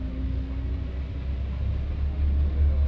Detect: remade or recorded recorded